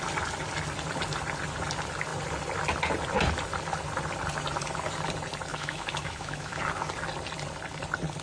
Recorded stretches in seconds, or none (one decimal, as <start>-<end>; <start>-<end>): 0.0-5.5; 6.6-8.2